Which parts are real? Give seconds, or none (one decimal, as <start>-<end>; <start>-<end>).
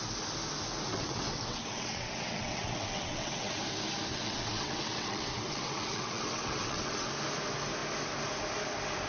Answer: 0.0-0.9; 3.6-4.1; 7.1-9.1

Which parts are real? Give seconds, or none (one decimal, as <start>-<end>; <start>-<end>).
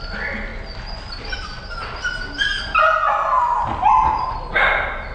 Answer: 0.0-5.1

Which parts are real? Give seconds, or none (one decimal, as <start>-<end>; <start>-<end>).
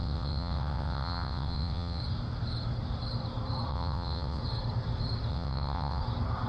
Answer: 2.0-3.7; 4.4-5.3; 6.0-6.5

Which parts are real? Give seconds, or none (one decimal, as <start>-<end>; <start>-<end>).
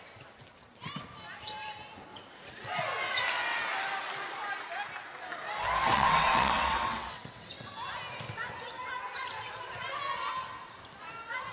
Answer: 0.0-2.1; 2.7-5.8; 7.7-11.5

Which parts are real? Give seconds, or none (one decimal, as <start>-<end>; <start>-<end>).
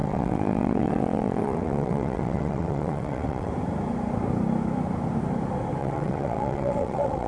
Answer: 3.5-5.8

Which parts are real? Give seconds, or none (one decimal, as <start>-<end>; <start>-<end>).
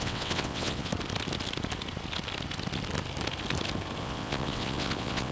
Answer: 0.9-4.0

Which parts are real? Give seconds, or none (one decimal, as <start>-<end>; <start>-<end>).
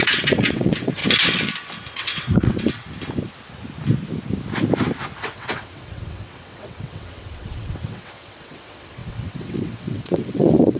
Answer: 1.0-1.9; 2.8-5.2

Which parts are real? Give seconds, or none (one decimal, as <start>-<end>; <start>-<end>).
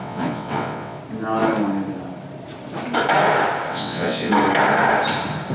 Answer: 1.0-3.7; 4.3-5.5